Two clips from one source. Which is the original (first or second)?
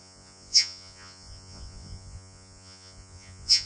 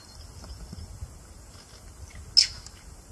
second